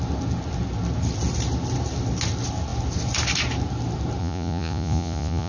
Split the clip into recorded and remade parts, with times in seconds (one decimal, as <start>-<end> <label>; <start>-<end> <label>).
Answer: 0.0-4.2 recorded; 4.2-5.5 remade